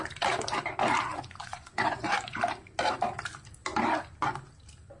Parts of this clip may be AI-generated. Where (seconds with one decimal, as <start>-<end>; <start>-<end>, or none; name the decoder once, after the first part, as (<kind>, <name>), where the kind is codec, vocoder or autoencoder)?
1.1-2.4 (vocoder, Vocos)